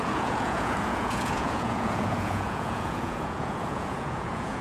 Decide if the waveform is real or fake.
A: fake